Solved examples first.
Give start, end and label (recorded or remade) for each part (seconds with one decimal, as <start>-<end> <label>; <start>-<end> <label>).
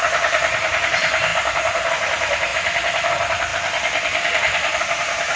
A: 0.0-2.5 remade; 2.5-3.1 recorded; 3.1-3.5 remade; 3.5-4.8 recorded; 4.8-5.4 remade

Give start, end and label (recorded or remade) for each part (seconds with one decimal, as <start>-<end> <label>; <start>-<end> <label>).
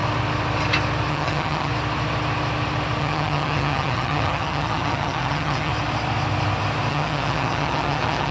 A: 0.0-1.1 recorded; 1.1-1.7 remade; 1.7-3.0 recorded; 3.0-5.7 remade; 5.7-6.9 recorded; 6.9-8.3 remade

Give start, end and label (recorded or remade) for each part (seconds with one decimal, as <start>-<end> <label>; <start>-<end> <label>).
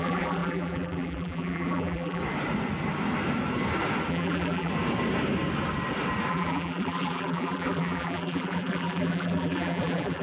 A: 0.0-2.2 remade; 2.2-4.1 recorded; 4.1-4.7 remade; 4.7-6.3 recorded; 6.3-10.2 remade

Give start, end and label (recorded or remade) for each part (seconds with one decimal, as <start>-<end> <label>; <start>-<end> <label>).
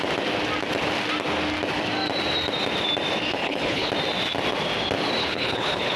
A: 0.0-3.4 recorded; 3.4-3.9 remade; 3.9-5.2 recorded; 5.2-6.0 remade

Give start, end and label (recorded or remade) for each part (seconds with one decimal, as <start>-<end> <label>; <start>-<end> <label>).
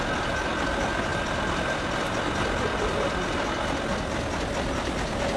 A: 0.0-5.4 recorded